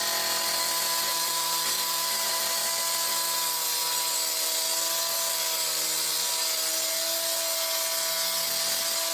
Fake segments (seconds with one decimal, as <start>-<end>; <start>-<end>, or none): 1.1-2.4